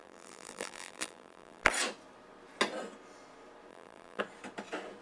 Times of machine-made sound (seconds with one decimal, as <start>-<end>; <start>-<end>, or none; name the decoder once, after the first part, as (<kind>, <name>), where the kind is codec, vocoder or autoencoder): 0.0-1.7 (vocoder, BigVGAN v2); 3.7-4.2